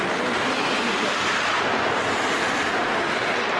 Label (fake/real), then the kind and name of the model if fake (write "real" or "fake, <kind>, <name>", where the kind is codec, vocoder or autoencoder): real